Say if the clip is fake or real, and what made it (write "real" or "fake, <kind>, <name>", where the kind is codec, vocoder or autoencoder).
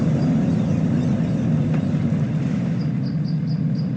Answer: real